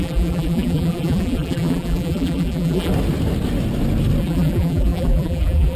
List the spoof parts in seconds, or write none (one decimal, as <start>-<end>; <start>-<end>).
0.0-2.9; 4.2-5.8